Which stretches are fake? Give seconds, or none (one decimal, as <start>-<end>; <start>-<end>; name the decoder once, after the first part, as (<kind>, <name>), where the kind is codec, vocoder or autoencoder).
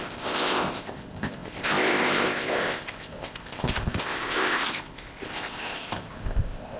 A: 0.0-6.8 (codec, ZipCodec)